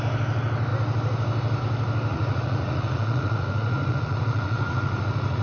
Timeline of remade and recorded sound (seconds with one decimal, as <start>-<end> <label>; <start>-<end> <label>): 0.0-2.1 recorded; 2.1-5.4 remade

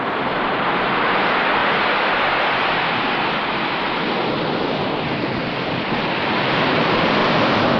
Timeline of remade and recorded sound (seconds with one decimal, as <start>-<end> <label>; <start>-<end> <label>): 0.0-1.6 remade; 1.6-6.3 recorded; 6.3-7.2 remade; 7.2-7.8 recorded